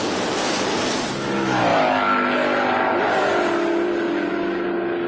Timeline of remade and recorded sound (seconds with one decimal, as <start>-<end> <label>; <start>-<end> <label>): 0.0-5.1 recorded